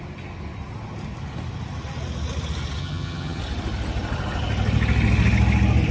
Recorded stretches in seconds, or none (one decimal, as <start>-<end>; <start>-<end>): 0.0-2.8; 3.4-5.9